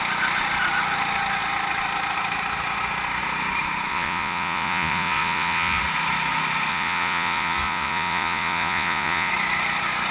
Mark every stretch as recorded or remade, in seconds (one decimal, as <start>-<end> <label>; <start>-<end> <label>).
0.0-3.9 recorded; 3.9-5.8 remade; 5.8-6.7 recorded; 6.7-9.3 remade; 9.3-10.1 recorded